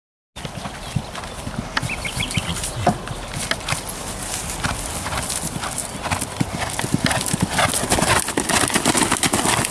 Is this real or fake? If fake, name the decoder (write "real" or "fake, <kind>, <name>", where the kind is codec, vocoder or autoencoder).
real